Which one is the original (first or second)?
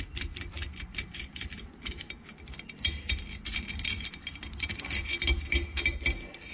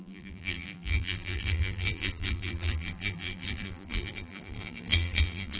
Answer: first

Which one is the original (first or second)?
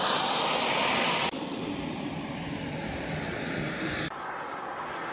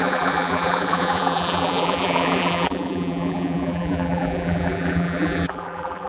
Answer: first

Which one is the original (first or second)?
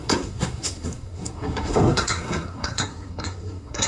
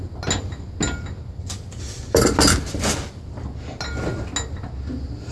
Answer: second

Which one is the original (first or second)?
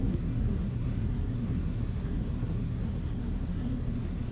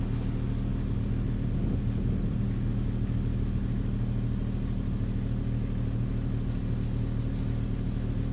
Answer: second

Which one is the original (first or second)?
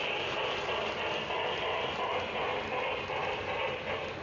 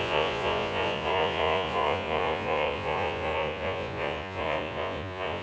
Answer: first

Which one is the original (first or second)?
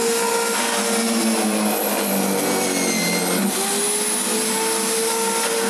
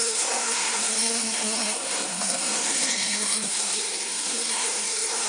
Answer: first